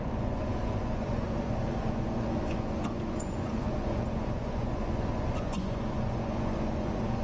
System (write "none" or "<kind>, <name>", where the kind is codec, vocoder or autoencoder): vocoder, Vocos